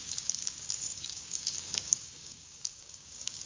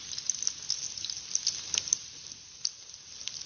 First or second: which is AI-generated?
first